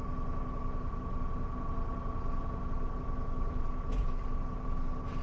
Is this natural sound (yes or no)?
yes